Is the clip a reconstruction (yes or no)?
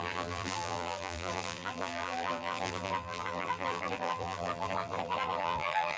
yes